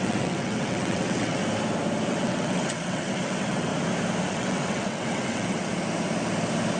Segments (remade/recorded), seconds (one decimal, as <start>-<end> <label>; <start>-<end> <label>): 0.0-1.4 remade; 1.4-2.1 recorded; 2.1-3.7 remade; 3.7-4.3 recorded; 4.3-5.7 remade; 5.7-6.8 recorded

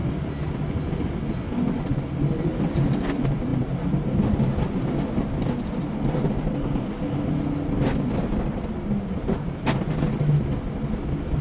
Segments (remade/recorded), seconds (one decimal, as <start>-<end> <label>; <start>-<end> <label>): 0.0-11.4 recorded

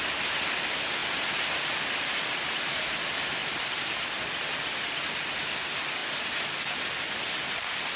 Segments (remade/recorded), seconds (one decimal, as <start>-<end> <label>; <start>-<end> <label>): 0.0-8.0 recorded

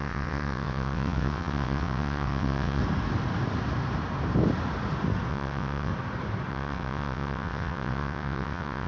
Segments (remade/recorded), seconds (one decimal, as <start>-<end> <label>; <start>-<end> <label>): 0.0-2.8 remade; 2.8-5.3 recorded; 5.3-5.9 remade; 5.9-6.5 recorded; 6.5-8.9 remade

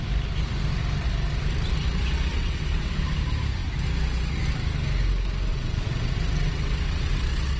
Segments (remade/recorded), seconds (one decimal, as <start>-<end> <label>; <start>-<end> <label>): 0.0-2.3 recorded; 2.3-2.9 remade; 2.9-5.5 recorded; 5.5-7.6 remade